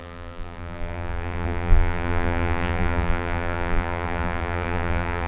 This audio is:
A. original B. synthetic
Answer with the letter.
B